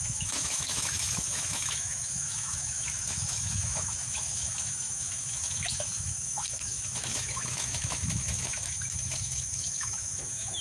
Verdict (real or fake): fake